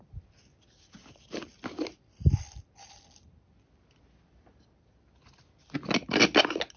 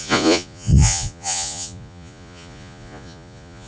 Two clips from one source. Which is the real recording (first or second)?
first